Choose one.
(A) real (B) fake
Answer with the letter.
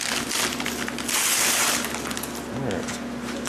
A